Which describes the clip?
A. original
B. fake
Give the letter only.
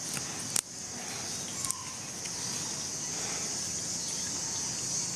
A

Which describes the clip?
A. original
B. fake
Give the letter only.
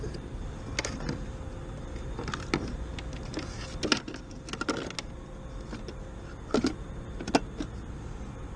A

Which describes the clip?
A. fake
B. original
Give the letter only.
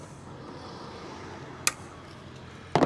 B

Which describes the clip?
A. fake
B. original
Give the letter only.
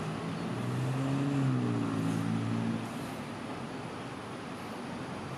B